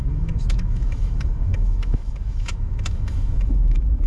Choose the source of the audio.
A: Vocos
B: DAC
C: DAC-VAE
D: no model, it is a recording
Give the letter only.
C